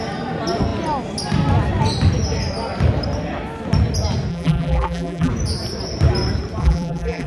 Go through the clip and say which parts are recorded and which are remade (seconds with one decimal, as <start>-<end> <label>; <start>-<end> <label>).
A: 0.0-4.3 recorded; 4.3-5.3 remade; 5.3-6.6 recorded; 6.6-7.3 remade